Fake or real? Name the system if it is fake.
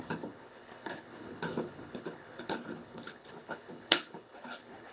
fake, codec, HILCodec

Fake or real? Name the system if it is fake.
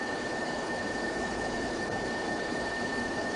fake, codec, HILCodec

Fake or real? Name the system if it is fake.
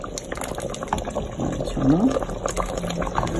real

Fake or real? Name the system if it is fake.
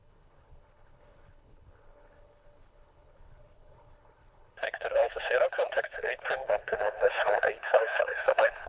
fake, codec, HILCodec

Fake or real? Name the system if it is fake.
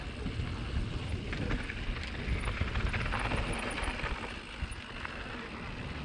real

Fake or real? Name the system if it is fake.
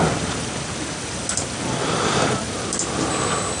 real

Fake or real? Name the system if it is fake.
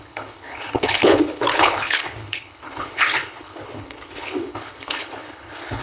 fake, codec, HILCodec